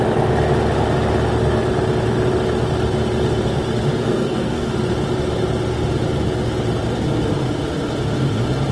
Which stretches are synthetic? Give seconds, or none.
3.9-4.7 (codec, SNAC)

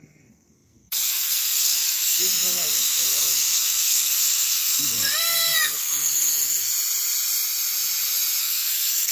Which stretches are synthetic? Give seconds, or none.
0.0-6.7 (codec, SNAC); 8.4-9.1

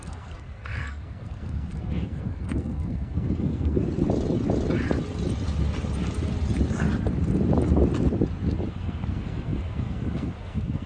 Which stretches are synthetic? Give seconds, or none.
0.0-3.8 (codec, SNAC); 8.7-10.9

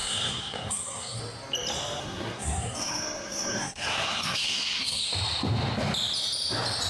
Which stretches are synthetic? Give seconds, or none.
0.0-1.2 (codec, SNAC); 2.0-5.1

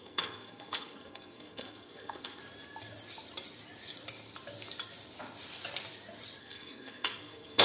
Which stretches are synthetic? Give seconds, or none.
0.0-2.4 (codec, SNAC); 6.4-7.6

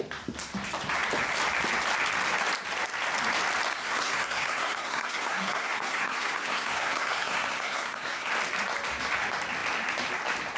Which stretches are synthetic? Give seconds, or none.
3.7-8.3 (codec, SNAC)